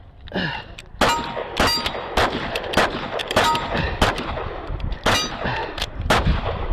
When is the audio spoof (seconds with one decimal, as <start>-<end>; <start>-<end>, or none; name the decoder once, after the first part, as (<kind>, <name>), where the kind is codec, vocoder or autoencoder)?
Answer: 3.2-3.8 (vocoder, BigVGAN v2); 5.6-6.7